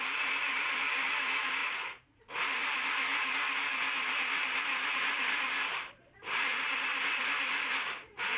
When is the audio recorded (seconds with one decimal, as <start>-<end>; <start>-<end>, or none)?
0.0-1.6; 2.2-8.4